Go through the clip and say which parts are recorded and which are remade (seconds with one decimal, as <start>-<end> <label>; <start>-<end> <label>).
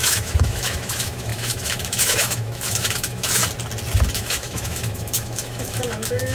0.0-3.4 remade; 3.4-4.1 recorded; 4.1-6.3 remade